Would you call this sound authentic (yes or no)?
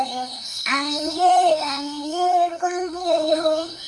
no